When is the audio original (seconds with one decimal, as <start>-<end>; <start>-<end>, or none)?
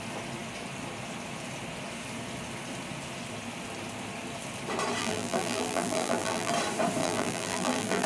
0.0-5.0; 6.5-7.0